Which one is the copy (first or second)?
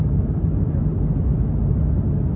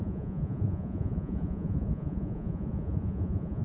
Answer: second